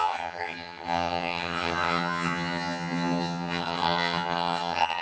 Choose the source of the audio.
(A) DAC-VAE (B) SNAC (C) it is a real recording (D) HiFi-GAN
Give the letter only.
D